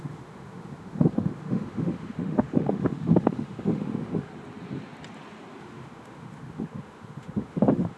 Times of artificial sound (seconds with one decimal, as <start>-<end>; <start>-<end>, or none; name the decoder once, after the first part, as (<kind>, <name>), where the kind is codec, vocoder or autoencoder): 0.0-4.3 (autoencoder, DAC-VAE); 5.6-8.0